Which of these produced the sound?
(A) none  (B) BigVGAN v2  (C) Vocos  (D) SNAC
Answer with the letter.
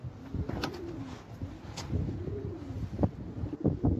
A